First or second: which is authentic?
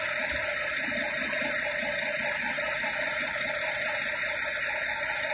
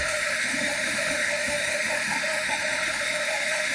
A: first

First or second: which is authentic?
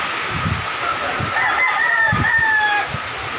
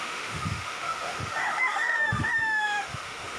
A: first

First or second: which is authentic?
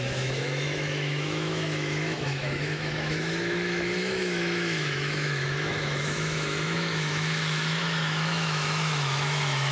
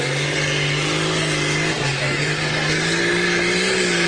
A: second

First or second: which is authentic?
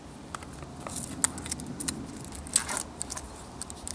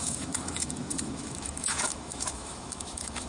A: first